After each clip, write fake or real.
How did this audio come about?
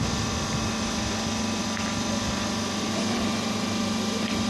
fake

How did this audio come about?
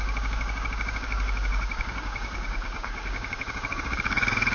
fake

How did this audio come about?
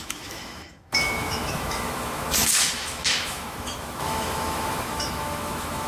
fake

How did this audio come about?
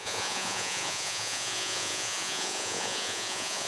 fake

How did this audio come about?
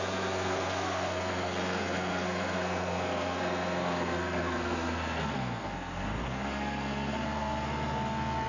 fake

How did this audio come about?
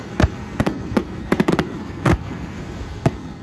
fake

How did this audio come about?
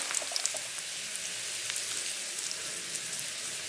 real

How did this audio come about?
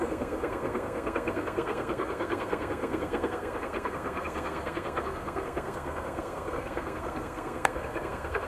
fake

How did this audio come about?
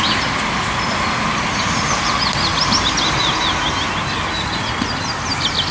real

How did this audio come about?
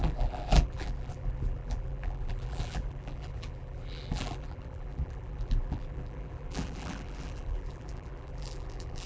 fake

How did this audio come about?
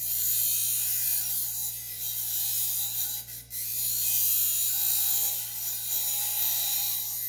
real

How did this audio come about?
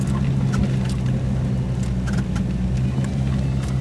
real